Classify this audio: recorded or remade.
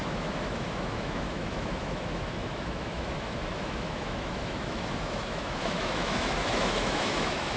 remade